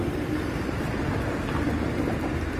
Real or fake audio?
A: real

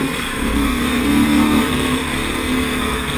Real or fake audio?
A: fake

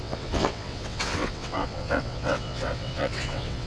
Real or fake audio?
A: fake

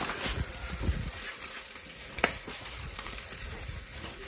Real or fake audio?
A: fake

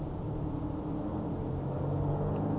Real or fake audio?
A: real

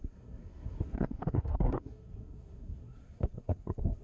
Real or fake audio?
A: fake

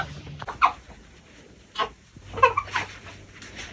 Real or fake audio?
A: real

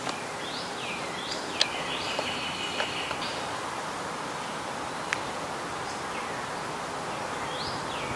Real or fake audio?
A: real